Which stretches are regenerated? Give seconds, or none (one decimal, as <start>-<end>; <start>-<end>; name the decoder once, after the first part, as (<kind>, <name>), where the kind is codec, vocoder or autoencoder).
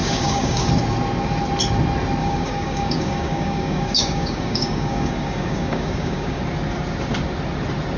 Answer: 0.0-0.7 (codec, DAC); 2.2-6.4